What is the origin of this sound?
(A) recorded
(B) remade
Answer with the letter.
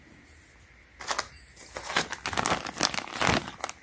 A